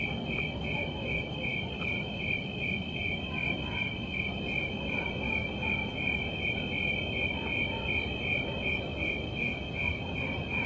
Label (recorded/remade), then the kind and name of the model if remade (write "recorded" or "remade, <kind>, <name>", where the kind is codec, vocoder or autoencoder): recorded